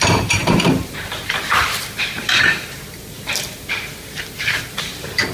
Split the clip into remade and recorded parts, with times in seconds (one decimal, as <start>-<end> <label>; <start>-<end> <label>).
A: 0.0-5.3 remade